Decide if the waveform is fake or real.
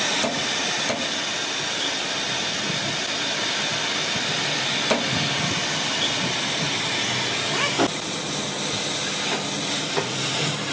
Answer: real